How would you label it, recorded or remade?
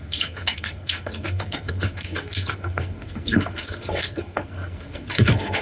remade